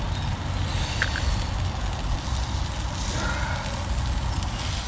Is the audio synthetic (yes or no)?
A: no